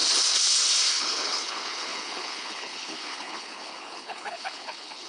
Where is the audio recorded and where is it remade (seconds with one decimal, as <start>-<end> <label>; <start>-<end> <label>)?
0.0-0.9 recorded; 0.9-5.1 remade